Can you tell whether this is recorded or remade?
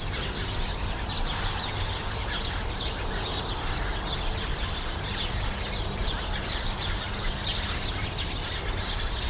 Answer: recorded